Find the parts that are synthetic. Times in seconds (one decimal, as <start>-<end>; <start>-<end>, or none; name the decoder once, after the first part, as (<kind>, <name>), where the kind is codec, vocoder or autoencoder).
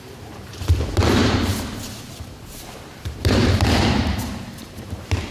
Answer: 0.0-1.5 (vocoder, BigVGAN v2); 2.0-5.3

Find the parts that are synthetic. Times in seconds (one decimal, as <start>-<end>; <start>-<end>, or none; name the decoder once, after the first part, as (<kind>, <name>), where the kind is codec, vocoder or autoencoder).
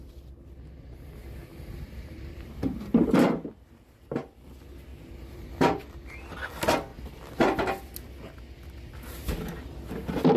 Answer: 1.5-2.9 (vocoder, BigVGAN v2); 4.9-5.8